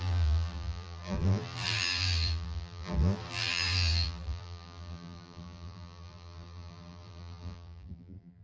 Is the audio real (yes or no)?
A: no